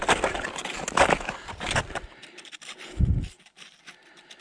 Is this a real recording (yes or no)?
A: no